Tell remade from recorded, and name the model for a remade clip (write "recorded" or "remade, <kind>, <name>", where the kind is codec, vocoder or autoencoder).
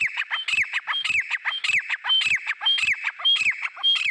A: recorded